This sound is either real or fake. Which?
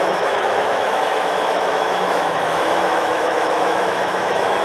fake